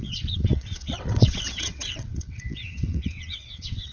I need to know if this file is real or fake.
fake